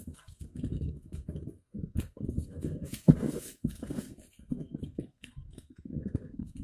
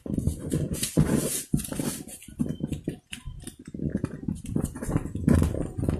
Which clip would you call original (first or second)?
second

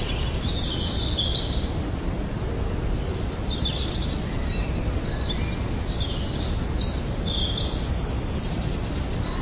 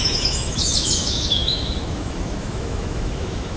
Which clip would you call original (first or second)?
first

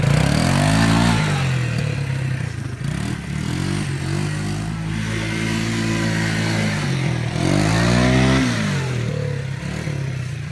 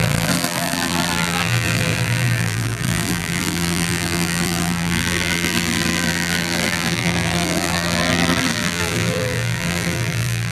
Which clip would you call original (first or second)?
first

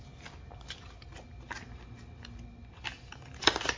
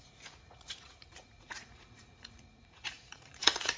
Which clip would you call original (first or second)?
first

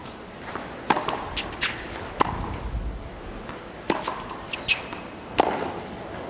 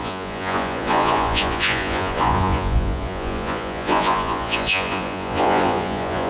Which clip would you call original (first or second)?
first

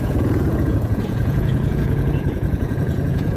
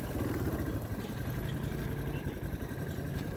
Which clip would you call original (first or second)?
second